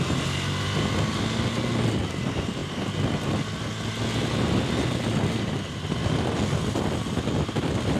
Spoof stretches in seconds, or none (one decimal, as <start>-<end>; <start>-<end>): none